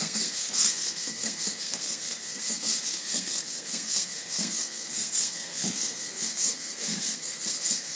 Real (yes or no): no